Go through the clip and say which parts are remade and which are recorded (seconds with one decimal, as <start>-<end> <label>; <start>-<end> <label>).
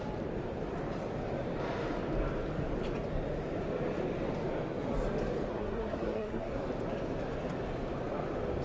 0.0-5.5 recorded; 5.5-6.5 remade; 6.5-8.6 recorded